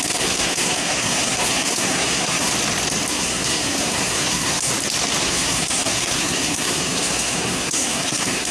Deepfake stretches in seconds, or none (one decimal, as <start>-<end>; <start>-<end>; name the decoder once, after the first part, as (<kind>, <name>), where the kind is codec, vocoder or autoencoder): 0.0-2.5 (codec, SNAC); 3.1-4.7; 5.2-8.5